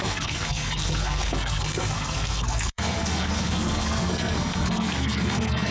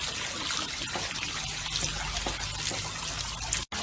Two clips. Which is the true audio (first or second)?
second